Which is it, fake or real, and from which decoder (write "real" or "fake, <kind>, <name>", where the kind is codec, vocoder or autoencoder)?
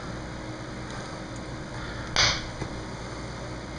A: real